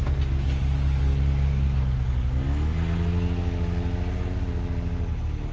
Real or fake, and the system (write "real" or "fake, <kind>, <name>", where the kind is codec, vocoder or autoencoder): real